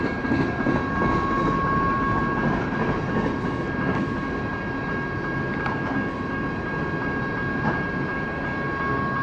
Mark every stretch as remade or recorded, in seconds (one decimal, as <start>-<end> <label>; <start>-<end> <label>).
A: 0.0-9.2 recorded